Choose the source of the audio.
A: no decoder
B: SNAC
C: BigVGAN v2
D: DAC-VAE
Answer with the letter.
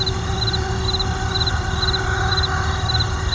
A